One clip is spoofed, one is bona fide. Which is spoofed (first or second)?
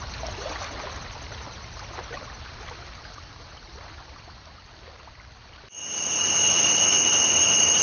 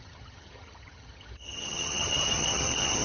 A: second